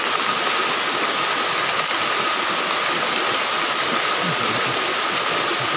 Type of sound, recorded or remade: recorded